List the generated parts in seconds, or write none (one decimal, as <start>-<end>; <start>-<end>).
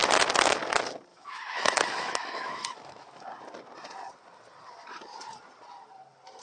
1.1-3.2